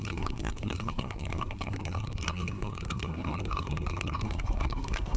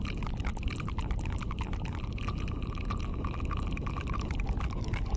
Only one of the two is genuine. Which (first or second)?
second